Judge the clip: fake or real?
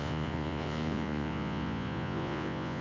fake